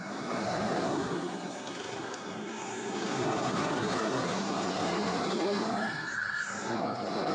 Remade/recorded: remade